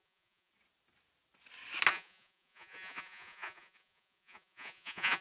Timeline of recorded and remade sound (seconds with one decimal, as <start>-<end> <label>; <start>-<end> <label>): 0.0-0.5 remade; 0.5-1.9 recorded; 1.9-5.2 remade